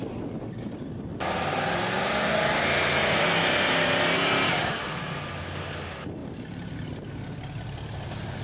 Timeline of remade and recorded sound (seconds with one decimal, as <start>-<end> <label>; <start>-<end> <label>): 0.0-3.0 recorded; 3.0-5.2 remade; 5.2-6.2 recorded; 6.2-7.1 remade; 7.1-8.4 recorded